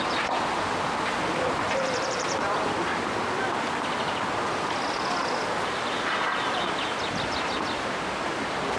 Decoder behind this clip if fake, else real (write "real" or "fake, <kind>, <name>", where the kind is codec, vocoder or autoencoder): real